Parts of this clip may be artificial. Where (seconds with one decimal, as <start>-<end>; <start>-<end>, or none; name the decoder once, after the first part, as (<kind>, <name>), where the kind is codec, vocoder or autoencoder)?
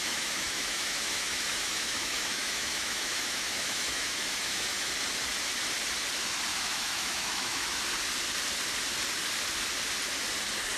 0.0-4.9 (autoencoder, DAC-VAE); 6.5-7.8